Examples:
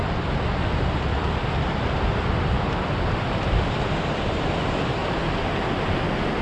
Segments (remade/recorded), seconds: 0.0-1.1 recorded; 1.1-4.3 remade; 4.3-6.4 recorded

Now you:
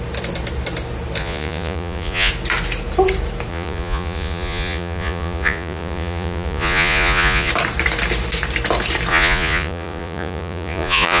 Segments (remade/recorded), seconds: 0.0-1.2 recorded; 1.2-2.3 remade; 2.3-3.5 recorded; 3.5-7.5 remade; 7.5-9.1 recorded; 9.1-11.2 remade